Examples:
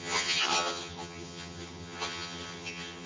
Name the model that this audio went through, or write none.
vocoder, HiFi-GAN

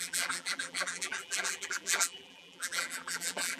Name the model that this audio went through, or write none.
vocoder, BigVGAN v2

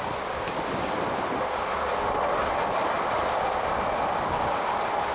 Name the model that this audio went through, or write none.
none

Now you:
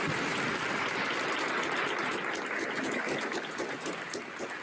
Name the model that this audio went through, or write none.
none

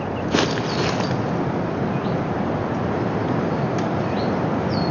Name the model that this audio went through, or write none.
none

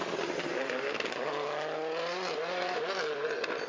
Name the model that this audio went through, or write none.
none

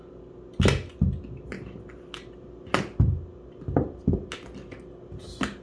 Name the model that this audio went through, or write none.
none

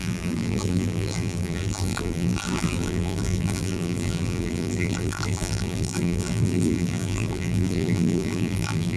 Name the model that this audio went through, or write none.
vocoder, BigVGAN v2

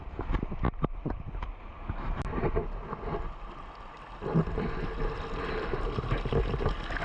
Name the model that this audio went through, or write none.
none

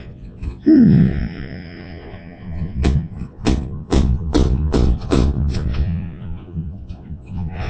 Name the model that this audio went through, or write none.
vocoder, Vocos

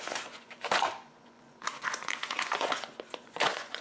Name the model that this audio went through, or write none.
vocoder, Vocos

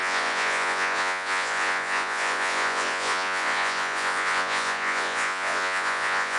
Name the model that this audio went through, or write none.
vocoder, Vocos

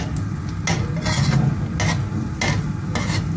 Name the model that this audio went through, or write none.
none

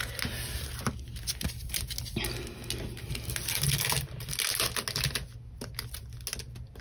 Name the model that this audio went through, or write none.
none